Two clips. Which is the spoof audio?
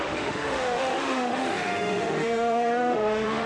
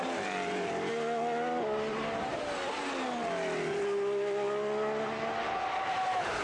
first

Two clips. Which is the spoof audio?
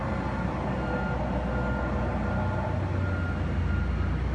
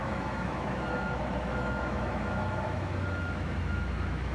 second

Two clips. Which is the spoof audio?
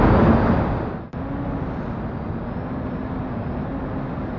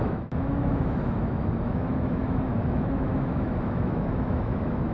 second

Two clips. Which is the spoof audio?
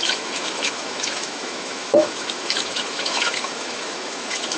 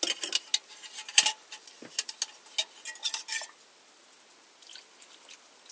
first